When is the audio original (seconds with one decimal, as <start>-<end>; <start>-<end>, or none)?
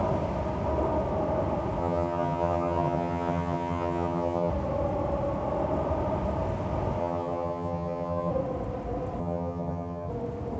0.0-1.8; 4.5-7.0; 8.3-9.2; 10.1-10.6